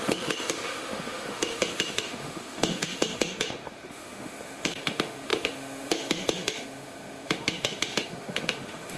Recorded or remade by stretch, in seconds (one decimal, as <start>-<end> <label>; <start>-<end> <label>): 0.0-9.0 remade

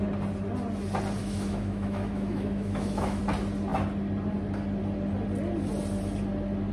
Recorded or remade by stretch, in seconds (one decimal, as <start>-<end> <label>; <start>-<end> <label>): 0.0-1.2 recorded; 1.2-3.2 remade; 3.2-6.7 recorded

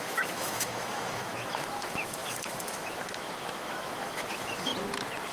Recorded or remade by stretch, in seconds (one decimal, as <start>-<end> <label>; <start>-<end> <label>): 0.0-4.7 remade; 4.7-5.3 recorded

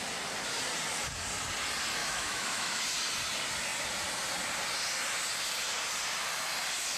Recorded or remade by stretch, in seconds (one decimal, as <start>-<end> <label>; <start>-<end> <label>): 0.0-2.0 recorded; 2.0-2.8 remade; 2.8-7.0 recorded

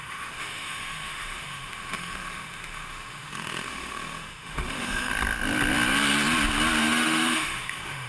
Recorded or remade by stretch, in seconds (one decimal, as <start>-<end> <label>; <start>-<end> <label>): 0.0-5.1 remade; 5.1-6.8 recorded; 6.8-8.1 remade